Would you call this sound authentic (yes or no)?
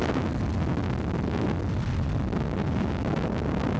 yes